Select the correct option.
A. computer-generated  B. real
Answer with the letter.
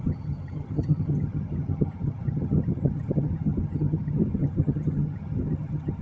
A